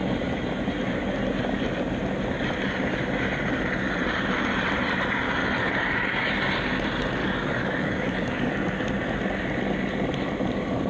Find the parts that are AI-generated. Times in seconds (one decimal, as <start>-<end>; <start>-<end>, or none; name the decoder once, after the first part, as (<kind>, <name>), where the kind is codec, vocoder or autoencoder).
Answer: 5.4-6.3 (codec, DAC); 7.2-8.5